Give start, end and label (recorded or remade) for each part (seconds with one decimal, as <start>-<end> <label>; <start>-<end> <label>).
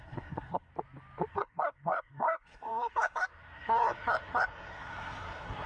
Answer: 0.0-0.7 remade; 0.7-1.3 recorded; 1.3-5.7 remade